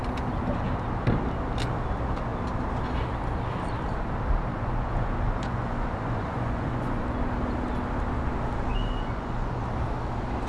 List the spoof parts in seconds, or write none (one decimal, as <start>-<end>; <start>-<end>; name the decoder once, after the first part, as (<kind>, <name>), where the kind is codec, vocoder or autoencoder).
4.5-7.0 (vocoder, Vocos); 8.7-9.6